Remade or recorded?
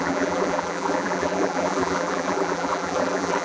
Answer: remade